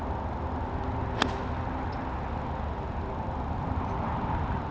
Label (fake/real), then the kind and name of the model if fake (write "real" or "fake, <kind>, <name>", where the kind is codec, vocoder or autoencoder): real